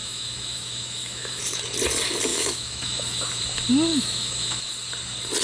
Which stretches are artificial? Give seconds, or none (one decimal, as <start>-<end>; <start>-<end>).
0.0-1.4; 2.3-3.4; 3.9-4.7